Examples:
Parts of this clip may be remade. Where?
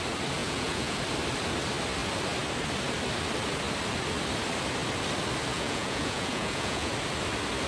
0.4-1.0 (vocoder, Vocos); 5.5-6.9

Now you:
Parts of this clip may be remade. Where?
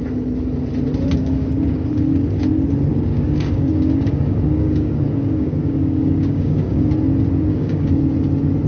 1.2-2.5 (codec, DAC); 2.9-6.9; 7.5-8.0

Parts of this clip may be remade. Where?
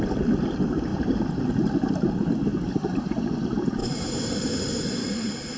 0.9-2.1 (vocoder, BigVGAN v2); 3.8-4.5